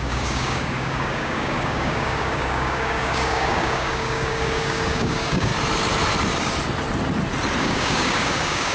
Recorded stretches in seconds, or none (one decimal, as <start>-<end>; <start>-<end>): 5.5-7.6

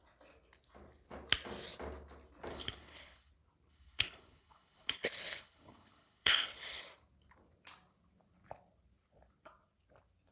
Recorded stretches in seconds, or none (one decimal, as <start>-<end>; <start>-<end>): 0.0-2.5; 3.3-3.7; 6.8-10.3

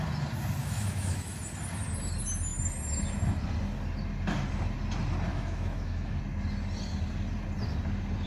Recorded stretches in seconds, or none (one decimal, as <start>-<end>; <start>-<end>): 0.0-0.6; 1.4-5.3; 6.2-8.3

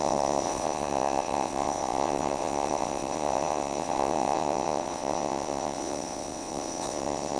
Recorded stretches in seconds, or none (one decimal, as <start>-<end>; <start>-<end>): none

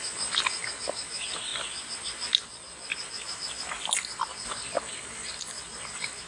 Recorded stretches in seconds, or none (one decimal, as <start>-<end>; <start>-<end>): 0.0-6.3

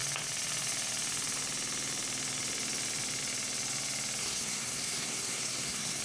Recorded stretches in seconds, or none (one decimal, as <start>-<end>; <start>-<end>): 0.0-4.2

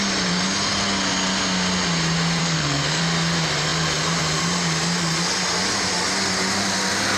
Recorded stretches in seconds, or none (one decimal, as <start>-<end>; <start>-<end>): 0.0-2.4; 3.0-7.2